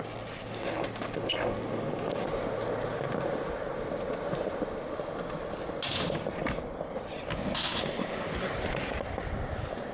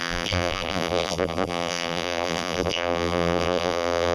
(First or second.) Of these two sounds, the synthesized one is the second